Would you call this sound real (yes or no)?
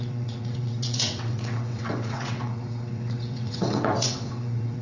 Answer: no